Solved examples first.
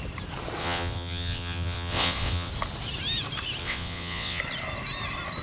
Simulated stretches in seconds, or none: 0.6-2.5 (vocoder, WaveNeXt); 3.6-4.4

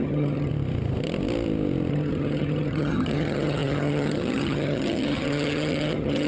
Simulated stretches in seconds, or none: 0.0-0.5 (vocoder, HiFi-GAN); 1.9-6.3

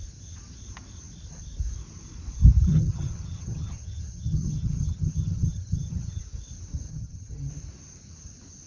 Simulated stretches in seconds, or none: 2.7-6.2 (vocoder, HiFi-GAN); 6.9-7.5